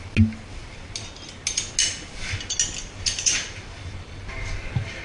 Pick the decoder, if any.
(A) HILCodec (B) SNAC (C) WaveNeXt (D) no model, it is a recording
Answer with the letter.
D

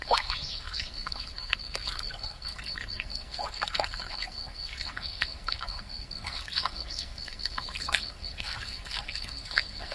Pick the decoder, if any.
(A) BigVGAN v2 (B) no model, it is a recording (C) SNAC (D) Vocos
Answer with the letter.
C